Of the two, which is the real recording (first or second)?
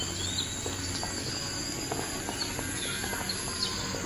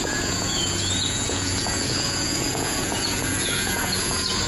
first